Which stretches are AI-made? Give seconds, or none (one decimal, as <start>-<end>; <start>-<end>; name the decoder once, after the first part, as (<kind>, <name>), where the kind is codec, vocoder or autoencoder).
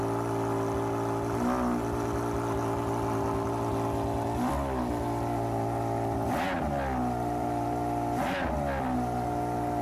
none